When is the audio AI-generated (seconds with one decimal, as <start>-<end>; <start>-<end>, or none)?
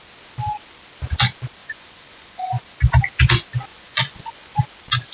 1.6-2.6; 3.7-4.6